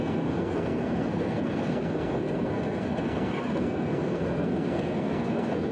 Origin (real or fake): fake